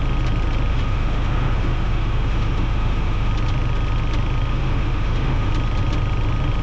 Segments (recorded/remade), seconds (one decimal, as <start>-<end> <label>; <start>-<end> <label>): 0.0-0.7 recorded; 0.7-3.3 remade; 3.3-4.5 recorded; 4.5-5.5 remade; 5.5-6.6 recorded